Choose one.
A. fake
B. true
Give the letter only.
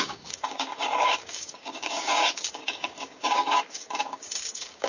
A